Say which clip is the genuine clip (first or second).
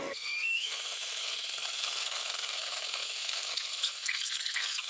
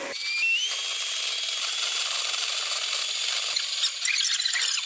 second